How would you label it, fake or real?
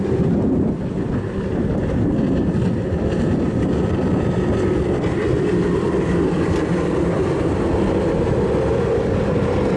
fake